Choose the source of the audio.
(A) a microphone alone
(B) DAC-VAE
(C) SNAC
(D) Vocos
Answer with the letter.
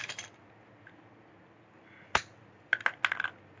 A